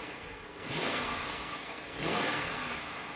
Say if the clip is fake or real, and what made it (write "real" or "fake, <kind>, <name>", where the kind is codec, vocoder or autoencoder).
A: fake, codec, SNAC